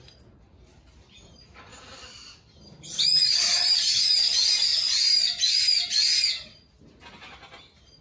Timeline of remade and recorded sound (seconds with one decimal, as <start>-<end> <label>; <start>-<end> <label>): 0.0-8.0 recorded